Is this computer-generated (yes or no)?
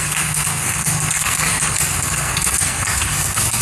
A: yes